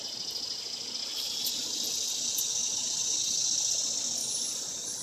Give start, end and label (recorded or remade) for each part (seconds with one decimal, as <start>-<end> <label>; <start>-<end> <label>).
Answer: 0.0-4.2 recorded; 4.2-5.0 remade